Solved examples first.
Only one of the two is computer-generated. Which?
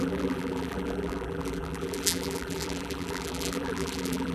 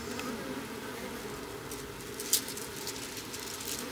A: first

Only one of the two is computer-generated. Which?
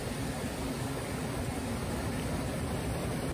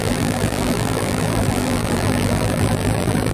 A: second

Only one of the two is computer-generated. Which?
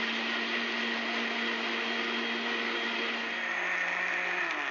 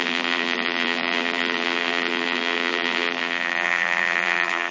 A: second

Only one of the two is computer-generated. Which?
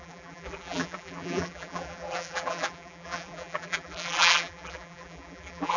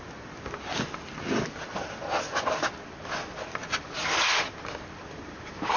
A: first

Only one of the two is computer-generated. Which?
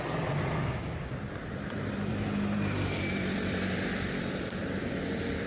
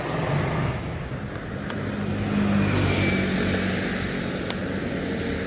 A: first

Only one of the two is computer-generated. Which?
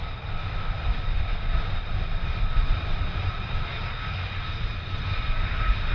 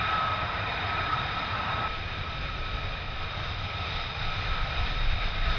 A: second